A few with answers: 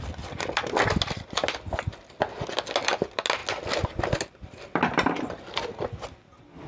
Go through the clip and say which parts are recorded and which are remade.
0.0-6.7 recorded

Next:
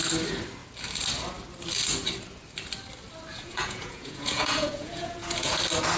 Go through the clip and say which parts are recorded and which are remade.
0.0-3.3 recorded; 3.3-5.6 remade; 5.6-6.0 recorded

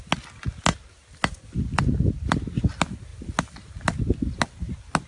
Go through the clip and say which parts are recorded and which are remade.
0.0-5.1 recorded

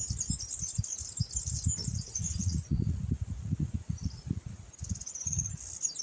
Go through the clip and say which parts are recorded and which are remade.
0.0-1.9 recorded; 1.9-5.5 remade; 5.5-6.0 recorded

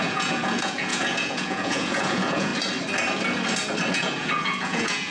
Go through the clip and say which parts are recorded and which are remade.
0.0-2.5 remade; 2.5-3.9 recorded; 3.9-5.1 remade

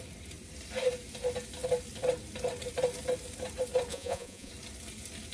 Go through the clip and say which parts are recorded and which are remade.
0.0-3.9 recorded; 3.9-4.5 remade; 4.5-5.3 recorded

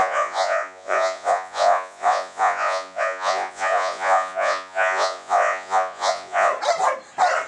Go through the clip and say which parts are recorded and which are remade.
0.0-6.5 remade; 6.5-7.5 recorded